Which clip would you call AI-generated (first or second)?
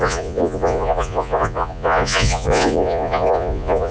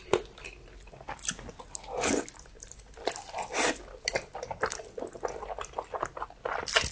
first